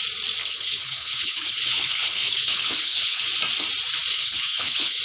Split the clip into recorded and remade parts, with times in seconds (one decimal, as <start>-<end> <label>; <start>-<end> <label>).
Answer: 0.0-0.4 recorded; 0.4-3.2 remade; 3.2-4.1 recorded; 4.1-5.0 remade